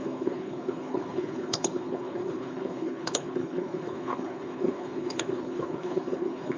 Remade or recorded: remade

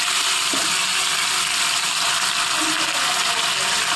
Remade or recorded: recorded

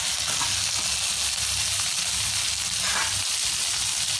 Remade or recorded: recorded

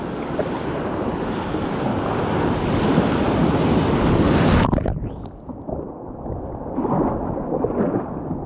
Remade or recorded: recorded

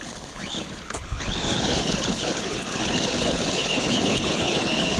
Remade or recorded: remade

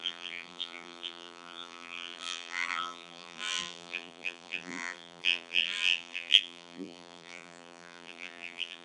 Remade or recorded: remade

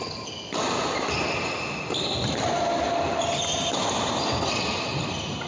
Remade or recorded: recorded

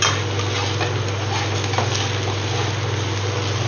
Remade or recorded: recorded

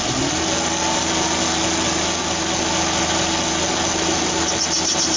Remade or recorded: recorded